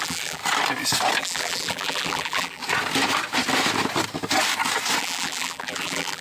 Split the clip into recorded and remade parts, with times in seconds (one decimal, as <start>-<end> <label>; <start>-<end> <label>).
0.0-0.4 remade; 0.4-1.2 recorded; 1.2-2.6 remade; 2.6-5.0 recorded; 5.0-6.2 remade